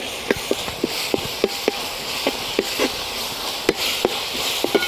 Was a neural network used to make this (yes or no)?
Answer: no